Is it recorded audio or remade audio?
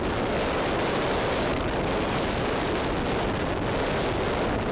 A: recorded